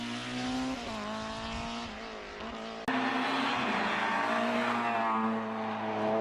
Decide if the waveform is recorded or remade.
recorded